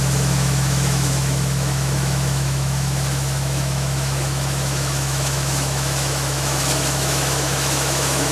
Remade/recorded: remade